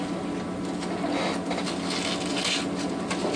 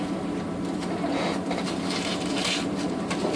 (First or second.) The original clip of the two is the first